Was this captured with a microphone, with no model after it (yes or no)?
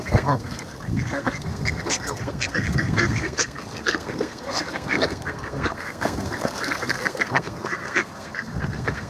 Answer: no